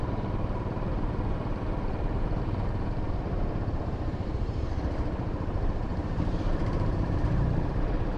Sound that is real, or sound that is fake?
fake